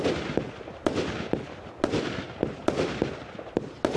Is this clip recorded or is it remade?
recorded